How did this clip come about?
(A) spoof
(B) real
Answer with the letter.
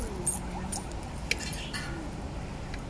B